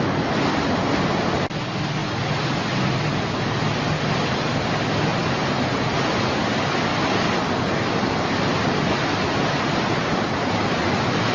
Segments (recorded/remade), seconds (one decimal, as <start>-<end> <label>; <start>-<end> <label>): 0.0-11.3 recorded